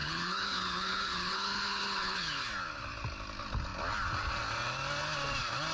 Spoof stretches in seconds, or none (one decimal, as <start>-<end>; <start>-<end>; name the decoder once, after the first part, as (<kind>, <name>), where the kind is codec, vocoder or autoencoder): 0.0-2.5 (codec, HILCodec)